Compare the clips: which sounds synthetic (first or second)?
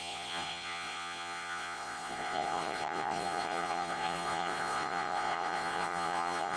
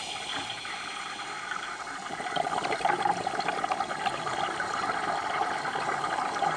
first